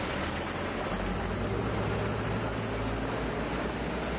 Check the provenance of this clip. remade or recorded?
recorded